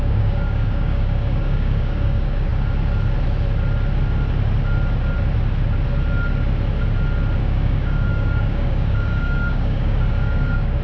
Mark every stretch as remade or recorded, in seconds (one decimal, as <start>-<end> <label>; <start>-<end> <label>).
0.0-2.5 remade; 2.5-7.4 recorded; 7.4-10.8 remade